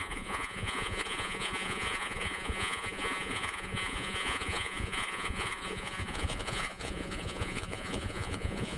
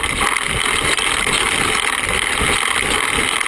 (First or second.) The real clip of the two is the second